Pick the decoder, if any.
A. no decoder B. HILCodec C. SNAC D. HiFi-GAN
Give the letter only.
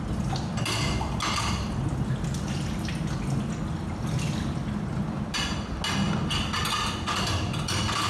A